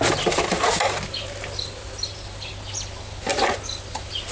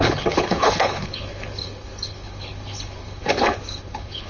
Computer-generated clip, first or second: second